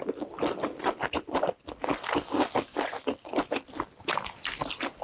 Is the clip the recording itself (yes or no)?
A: yes